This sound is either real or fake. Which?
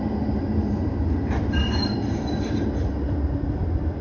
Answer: real